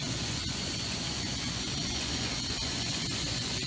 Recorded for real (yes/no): no